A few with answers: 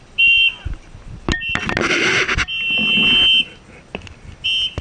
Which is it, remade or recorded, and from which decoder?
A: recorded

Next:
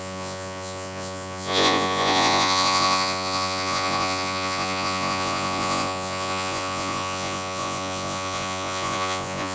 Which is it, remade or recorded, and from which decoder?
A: remade, vocoder, Vocos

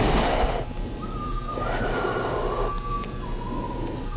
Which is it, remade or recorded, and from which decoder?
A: recorded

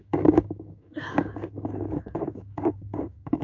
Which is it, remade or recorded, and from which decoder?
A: remade, codec, DAC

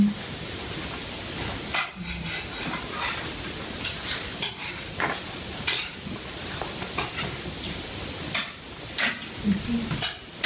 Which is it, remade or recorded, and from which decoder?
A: recorded